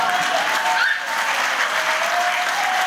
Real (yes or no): yes